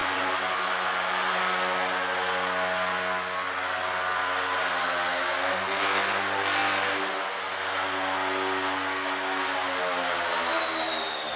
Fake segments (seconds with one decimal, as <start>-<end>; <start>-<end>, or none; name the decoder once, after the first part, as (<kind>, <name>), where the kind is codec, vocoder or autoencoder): 0.0-1.4 (vocoder, BigVGAN v2)